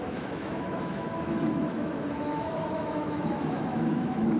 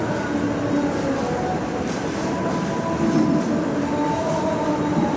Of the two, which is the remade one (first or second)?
first